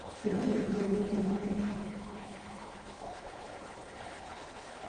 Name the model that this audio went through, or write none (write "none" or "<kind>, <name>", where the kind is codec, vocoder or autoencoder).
codec, HILCodec